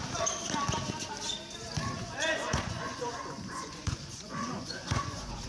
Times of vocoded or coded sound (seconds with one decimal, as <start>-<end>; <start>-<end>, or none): 2.0-5.5